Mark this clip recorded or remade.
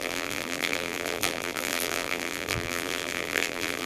remade